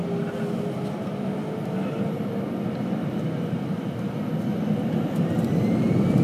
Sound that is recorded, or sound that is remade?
recorded